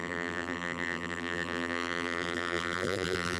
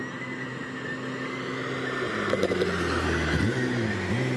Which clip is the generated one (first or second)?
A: first